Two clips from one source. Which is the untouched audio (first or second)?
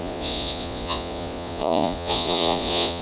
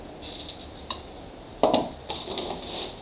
second